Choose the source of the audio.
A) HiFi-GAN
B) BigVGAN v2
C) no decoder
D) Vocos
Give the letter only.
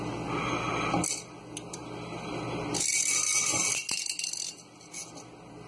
C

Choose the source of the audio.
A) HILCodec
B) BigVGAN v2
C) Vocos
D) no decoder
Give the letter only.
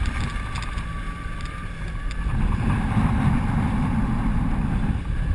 D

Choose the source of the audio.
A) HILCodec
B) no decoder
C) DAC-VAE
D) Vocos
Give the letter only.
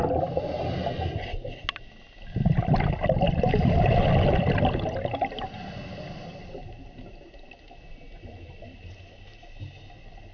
B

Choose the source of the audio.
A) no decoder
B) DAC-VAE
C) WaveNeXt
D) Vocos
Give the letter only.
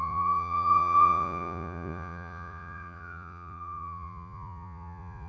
D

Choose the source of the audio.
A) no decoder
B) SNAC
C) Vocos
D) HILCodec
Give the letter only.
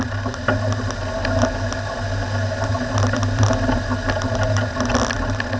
A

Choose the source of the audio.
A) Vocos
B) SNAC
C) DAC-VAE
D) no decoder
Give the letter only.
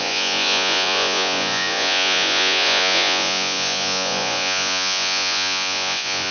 A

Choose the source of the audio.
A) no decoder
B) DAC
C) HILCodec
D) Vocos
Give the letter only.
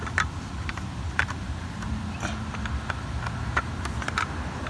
A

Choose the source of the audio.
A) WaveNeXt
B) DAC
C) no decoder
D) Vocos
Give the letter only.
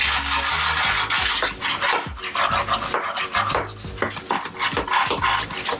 C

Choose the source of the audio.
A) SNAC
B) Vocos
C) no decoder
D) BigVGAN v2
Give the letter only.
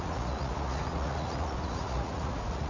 B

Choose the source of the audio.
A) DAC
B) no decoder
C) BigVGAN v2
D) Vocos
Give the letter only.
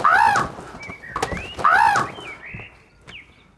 B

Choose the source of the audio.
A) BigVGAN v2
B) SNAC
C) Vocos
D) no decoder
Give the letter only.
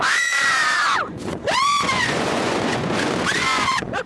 C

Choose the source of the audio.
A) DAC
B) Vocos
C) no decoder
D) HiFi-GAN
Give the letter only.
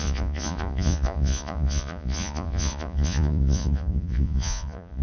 B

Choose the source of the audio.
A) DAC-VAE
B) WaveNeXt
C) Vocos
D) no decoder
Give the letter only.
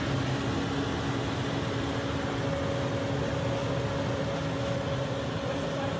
D